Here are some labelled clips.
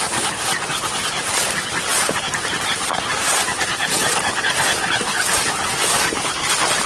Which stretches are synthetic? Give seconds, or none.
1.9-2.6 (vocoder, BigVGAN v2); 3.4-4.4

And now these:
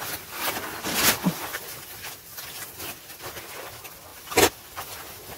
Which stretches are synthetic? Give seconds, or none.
1.5-3.2 (vocoder, BigVGAN v2)

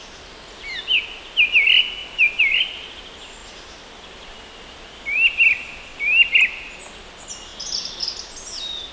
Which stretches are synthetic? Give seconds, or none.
2.0-2.6 (vocoder, BigVGAN v2)